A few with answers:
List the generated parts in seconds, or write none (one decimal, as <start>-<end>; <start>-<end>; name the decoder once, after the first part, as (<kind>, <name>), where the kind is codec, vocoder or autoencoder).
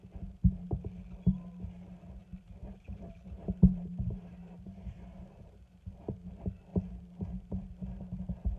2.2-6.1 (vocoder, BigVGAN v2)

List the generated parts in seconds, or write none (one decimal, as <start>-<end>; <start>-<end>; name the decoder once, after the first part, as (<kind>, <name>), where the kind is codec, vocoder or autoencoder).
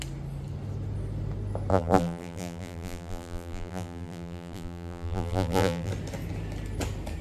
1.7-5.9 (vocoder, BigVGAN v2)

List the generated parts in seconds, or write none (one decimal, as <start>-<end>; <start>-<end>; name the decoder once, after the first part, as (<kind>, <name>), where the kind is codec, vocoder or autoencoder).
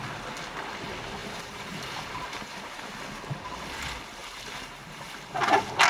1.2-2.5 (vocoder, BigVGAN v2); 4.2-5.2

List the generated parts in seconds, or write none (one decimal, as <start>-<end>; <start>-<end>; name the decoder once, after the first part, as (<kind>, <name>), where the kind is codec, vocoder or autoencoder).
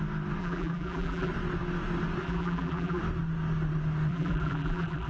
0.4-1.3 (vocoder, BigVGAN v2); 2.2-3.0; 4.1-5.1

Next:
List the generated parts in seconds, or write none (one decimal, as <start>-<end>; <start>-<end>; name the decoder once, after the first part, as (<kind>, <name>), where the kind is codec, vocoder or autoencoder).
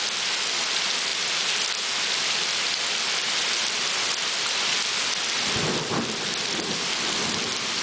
none